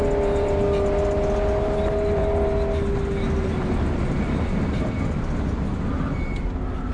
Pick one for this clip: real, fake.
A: real